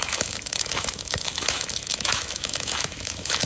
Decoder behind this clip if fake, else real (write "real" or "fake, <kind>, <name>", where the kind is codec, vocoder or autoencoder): fake, autoencoder, DAC-VAE